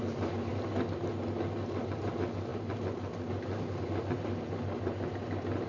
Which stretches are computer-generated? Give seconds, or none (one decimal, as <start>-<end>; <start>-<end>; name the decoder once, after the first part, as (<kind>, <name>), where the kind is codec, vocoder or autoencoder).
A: none